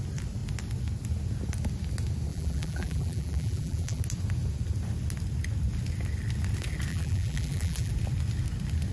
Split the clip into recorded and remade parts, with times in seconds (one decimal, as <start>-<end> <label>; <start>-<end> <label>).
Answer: 0.0-2.3 recorded; 2.3-4.0 remade; 4.0-6.9 recorded; 6.9-7.9 remade; 7.9-8.9 recorded